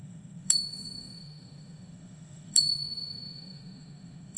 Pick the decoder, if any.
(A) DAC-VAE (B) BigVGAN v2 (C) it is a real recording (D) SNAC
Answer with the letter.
A